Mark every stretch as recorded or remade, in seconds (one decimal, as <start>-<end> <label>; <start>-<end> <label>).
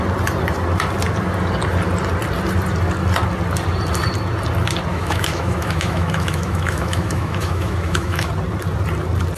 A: 0.0-4.9 recorded; 4.9-8.3 remade; 8.3-9.4 recorded